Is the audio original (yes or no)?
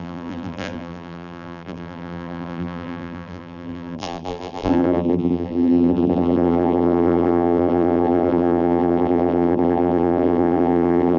no